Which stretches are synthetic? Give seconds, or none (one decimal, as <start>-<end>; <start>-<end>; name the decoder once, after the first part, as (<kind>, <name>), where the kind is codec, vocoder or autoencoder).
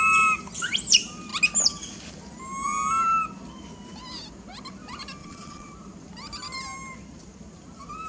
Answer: 5.2-5.7 (vocoder, Vocos)